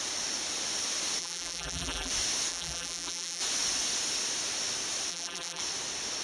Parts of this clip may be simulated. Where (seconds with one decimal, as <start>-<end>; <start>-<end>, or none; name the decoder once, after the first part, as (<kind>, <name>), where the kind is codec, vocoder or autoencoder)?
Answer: 1.2-2.1 (vocoder, BigVGAN v2); 2.5-3.4; 5.1-5.6